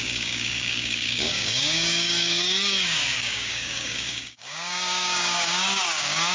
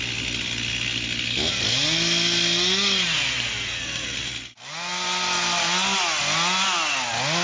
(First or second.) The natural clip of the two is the second